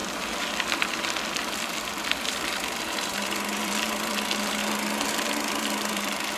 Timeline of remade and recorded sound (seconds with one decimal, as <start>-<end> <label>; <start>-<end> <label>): 0.0-4.6 remade; 4.6-5.1 recorded; 5.1-6.4 remade